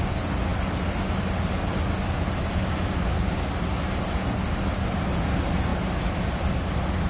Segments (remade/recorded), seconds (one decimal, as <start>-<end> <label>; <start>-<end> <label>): 0.0-7.1 recorded

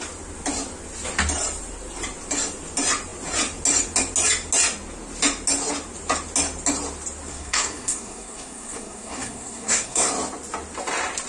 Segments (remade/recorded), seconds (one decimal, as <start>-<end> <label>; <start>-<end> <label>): 0.0-7.3 recorded; 7.3-10.1 remade; 10.1-11.3 recorded

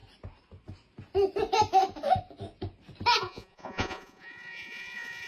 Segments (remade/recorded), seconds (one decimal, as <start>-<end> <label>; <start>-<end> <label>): 0.0-3.2 recorded; 3.2-5.3 remade

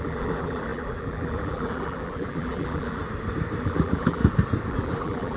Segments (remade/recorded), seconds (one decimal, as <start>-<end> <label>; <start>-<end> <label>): 0.0-3.0 remade; 3.0-3.6 recorded; 3.6-4.2 remade; 4.2-4.7 recorded; 4.7-5.4 remade

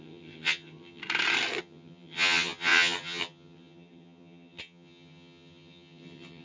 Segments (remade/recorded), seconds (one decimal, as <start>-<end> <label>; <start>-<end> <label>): 0.0-1.0 remade; 1.0-1.6 recorded; 1.6-6.4 remade